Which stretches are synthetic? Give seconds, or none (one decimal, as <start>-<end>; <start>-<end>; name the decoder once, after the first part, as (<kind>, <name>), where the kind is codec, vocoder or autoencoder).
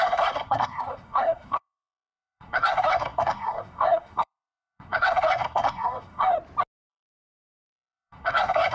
0.0-6.3 (codec, SNAC); 6.9-8.7